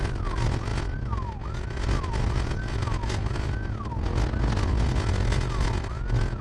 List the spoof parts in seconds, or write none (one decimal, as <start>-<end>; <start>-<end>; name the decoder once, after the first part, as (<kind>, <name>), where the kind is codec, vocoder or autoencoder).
none